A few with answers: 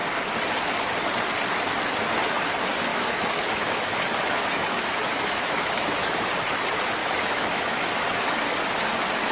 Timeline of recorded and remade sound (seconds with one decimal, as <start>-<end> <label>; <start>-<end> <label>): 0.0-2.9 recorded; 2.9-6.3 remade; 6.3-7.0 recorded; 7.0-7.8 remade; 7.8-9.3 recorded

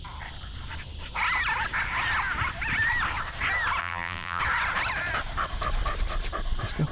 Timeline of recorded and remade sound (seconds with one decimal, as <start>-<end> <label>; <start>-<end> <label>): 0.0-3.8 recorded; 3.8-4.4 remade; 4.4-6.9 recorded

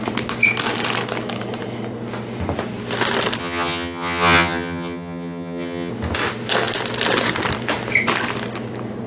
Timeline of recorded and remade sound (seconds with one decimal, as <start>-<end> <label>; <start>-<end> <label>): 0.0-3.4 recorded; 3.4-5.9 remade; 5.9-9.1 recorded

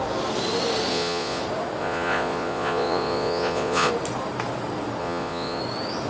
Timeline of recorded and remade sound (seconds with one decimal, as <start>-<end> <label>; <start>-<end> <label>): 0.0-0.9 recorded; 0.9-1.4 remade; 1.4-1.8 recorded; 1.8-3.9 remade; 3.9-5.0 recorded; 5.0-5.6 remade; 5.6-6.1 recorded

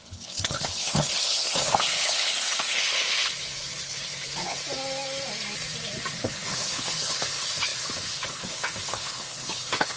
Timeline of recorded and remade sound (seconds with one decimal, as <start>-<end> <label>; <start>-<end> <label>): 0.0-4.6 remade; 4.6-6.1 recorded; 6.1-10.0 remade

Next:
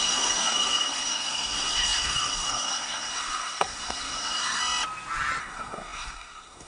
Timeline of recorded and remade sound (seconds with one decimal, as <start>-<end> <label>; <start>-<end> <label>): 0.0-4.6 remade; 4.6-5.4 recorded; 5.4-6.7 remade